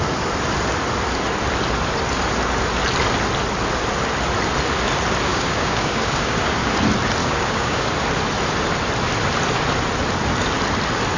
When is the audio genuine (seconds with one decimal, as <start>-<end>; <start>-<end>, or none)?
0.0-5.3; 6.7-7.2; 7.9-11.2